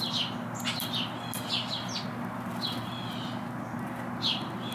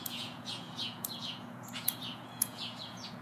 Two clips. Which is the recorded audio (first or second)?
first